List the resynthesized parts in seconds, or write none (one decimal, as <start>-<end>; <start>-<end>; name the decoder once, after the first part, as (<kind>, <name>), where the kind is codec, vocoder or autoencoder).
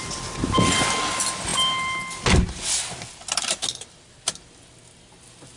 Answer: none